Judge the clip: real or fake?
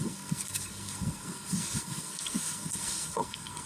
fake